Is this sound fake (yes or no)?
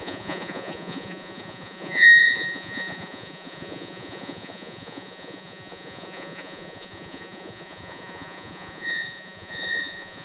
yes